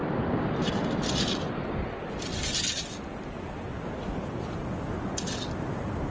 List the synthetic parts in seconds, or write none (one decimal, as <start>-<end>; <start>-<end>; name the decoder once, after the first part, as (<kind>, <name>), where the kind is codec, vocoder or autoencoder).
none